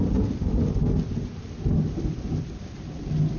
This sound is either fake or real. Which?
real